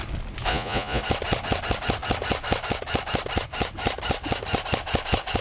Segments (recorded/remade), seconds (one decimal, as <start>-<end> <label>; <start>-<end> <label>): 0.0-0.5 recorded; 0.5-1.0 remade; 1.0-5.4 recorded

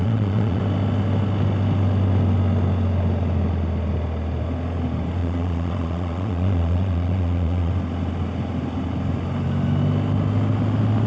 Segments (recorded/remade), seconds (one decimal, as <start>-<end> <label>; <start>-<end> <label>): 0.0-0.6 remade; 0.6-5.2 recorded; 5.2-7.7 remade; 7.7-11.1 recorded

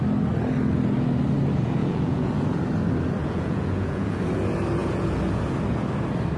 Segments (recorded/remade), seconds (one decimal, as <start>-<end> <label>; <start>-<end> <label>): 0.0-1.8 recorded; 1.8-2.3 remade; 2.3-3.2 recorded; 3.2-4.2 remade; 4.2-4.8 recorded; 4.8-5.4 remade; 5.4-6.4 recorded

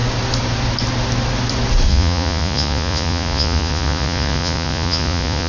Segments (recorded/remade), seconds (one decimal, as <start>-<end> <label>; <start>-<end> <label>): 0.0-1.9 recorded; 1.9-5.5 remade

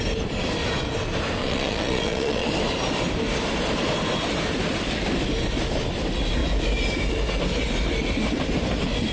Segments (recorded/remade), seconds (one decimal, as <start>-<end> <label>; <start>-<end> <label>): 0.0-1.4 recorded; 1.4-2.5 remade; 2.5-9.1 recorded

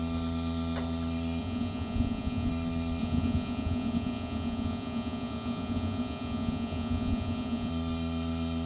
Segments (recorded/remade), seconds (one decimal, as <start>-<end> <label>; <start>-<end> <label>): 0.0-1.4 recorded; 1.4-2.5 remade; 2.5-3.0 recorded; 3.0-7.7 remade; 7.7-8.7 recorded